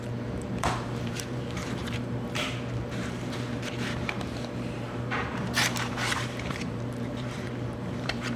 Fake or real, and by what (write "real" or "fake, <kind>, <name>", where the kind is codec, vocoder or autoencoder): fake, vocoder, BigVGAN v2